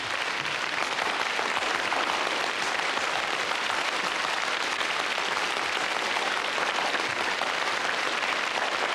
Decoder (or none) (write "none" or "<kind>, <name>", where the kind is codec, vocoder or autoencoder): none